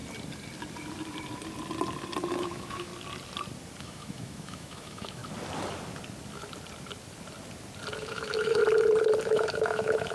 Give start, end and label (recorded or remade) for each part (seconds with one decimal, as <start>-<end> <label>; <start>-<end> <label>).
0.0-2.3 recorded; 2.3-2.9 remade; 2.9-3.8 recorded; 3.8-5.2 remade; 5.2-8.0 recorded; 8.0-8.6 remade; 8.6-9.2 recorded; 9.2-10.1 remade

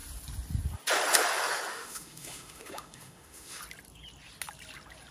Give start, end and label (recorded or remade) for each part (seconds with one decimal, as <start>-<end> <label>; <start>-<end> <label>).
0.0-1.7 recorded; 1.7-3.6 remade; 3.6-5.1 recorded

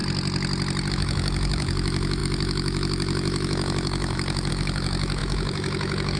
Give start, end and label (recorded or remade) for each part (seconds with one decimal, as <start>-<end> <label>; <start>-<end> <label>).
0.0-0.9 recorded; 0.9-6.2 remade

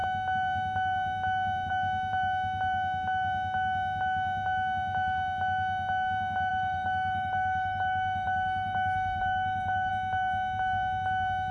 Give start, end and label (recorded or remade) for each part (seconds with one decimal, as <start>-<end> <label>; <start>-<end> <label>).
0.0-6.5 recorded; 6.5-9.9 remade; 9.9-11.5 recorded

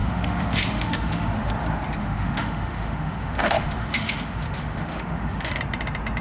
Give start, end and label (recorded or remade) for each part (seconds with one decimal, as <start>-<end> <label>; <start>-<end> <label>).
0.0-1.5 remade; 1.5-2.0 recorded; 2.0-5.6 remade; 5.6-6.2 recorded

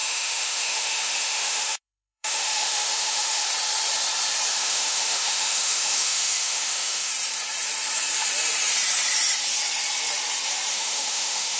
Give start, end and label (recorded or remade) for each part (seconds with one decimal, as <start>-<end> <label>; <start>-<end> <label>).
0.0-3.4 remade; 3.4-4.5 recorded; 4.5-7.1 remade; 7.1-10.7 recorded; 10.7-11.6 remade

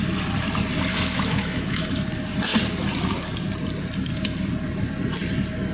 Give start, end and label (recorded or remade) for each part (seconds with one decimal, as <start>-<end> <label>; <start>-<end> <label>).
0.0-0.9 recorded; 0.9-2.0 remade; 2.0-5.7 recorded